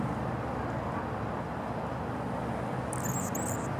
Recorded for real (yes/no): yes